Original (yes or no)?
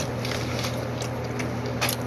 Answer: yes